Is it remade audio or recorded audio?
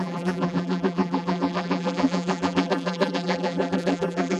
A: remade